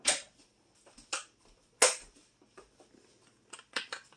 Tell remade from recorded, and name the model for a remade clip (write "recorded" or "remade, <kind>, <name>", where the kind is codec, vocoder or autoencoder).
recorded